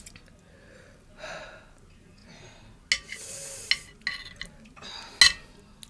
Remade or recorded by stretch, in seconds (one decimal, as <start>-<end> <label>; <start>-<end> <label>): 0.0-5.9 recorded